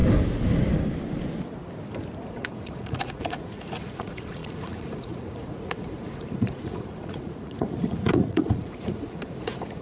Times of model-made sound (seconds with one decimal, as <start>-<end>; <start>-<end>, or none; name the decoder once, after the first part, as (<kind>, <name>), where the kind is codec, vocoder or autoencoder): 2.3-9.8 (vocoder, Vocos)